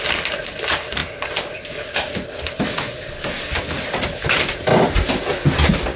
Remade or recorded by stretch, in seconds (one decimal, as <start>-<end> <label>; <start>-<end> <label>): 0.0-6.0 recorded